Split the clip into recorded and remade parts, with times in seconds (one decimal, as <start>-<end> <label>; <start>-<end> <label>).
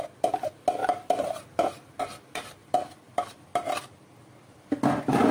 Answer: 0.0-0.8 recorded; 0.8-2.0 remade; 2.0-2.6 recorded; 2.6-4.3 remade; 4.3-5.3 recorded